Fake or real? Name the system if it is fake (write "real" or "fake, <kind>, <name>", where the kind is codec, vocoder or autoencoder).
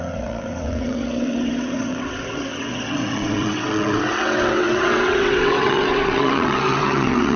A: fake, vocoder, WaveNeXt